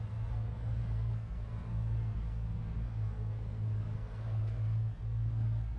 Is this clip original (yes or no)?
no